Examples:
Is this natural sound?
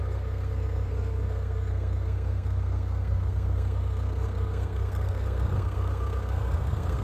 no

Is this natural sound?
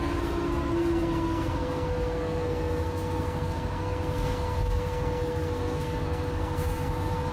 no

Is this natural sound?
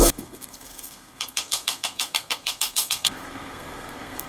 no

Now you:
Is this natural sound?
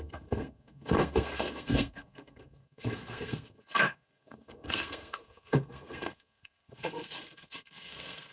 no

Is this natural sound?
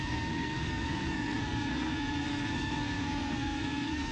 no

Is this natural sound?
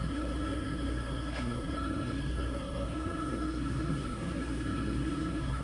no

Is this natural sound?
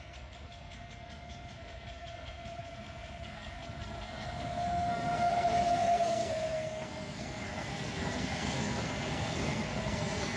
no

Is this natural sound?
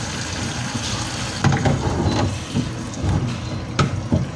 yes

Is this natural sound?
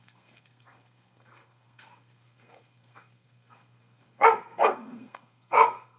no